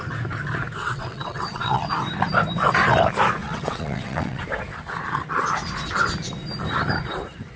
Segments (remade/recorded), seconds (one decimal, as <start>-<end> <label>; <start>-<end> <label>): 0.0-0.8 recorded; 0.8-1.8 remade; 1.8-3.4 recorded; 3.4-4.4 remade; 4.4-7.6 recorded